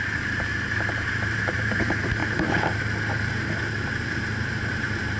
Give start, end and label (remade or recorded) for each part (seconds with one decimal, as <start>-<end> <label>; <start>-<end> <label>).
0.0-2.2 remade; 2.2-4.7 recorded; 4.7-5.2 remade